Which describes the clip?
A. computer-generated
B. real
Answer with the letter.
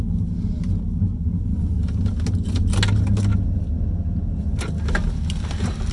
B